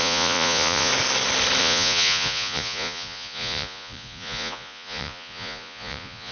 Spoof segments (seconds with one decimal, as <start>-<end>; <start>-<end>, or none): 0.0-0.9; 1.6-6.3